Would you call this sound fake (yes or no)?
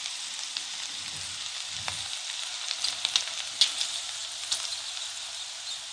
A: no